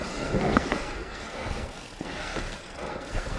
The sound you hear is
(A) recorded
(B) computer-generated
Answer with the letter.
B